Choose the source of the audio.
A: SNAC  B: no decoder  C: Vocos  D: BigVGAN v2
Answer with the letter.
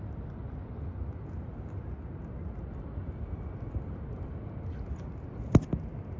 B